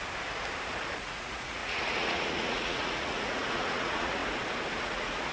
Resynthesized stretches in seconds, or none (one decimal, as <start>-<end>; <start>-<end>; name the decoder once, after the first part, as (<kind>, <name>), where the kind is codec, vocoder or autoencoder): 1.0-4.2 (vocoder, Vocos); 4.8-5.3